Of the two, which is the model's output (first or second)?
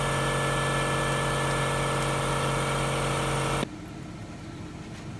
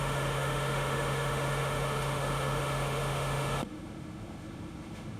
second